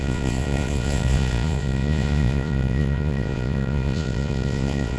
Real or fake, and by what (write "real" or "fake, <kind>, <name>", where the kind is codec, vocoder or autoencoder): fake, vocoder, Vocos